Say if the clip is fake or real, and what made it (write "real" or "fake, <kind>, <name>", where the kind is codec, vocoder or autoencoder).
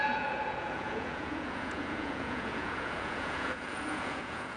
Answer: fake, vocoder, Vocos